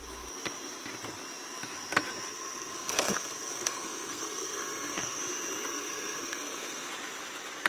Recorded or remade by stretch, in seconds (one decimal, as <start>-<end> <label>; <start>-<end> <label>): 0.0-2.3 recorded; 2.3-5.2 remade; 5.2-5.7 recorded; 5.7-6.9 remade; 6.9-7.7 recorded